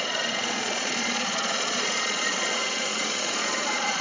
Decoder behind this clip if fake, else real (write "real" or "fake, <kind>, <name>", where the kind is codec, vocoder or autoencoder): fake, vocoder, Vocos